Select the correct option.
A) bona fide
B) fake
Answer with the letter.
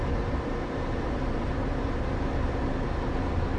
B